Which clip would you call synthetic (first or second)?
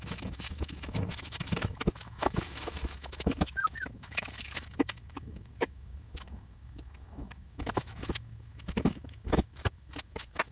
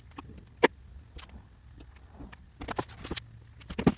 first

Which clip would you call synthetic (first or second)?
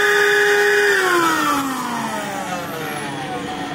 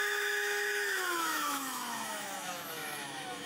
second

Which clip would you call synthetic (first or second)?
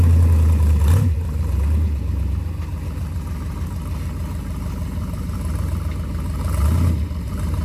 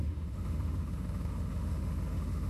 second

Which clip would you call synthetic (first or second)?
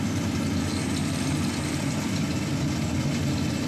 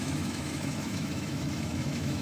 second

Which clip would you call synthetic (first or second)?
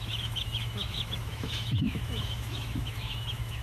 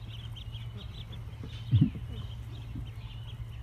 first